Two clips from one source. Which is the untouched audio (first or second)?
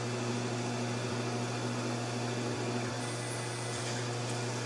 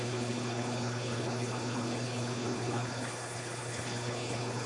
first